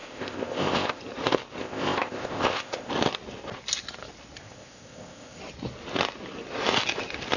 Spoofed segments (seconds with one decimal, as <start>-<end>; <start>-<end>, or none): 0.0-1.0; 1.6-2.9; 4.4-5.4